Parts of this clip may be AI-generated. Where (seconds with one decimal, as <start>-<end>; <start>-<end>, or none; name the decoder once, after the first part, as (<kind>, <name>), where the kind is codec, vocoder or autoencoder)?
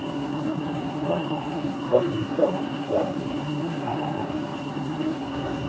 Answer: 0.0-5.7 (codec, SNAC)